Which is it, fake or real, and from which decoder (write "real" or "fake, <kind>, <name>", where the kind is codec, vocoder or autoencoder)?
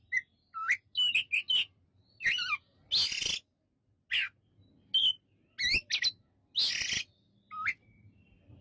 real